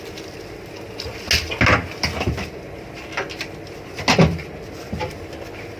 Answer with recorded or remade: recorded